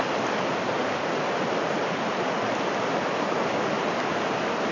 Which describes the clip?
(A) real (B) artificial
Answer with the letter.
A